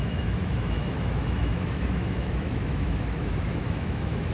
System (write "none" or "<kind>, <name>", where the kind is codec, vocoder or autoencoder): autoencoder, DAC-VAE